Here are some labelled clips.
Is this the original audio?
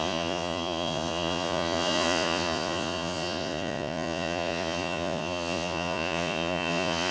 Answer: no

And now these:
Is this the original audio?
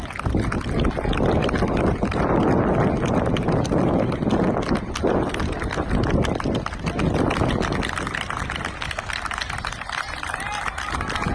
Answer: yes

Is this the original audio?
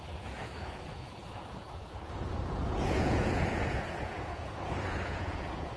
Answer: no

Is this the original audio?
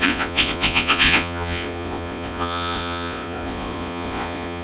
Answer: no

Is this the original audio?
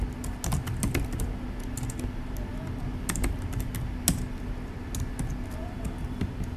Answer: yes